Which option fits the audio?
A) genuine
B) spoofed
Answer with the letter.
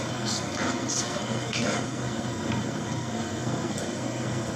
B